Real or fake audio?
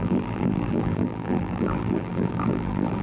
fake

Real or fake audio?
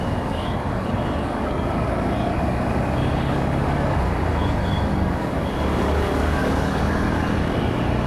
fake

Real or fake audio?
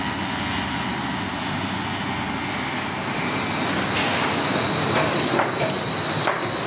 real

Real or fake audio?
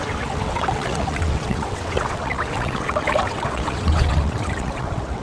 fake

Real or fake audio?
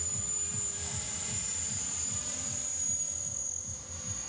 fake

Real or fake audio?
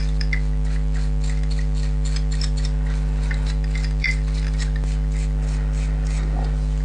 real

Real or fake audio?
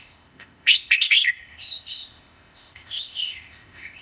fake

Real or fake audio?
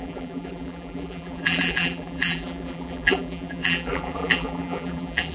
fake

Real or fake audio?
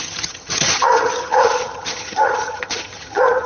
fake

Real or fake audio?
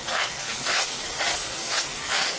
fake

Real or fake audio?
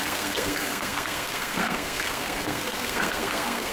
fake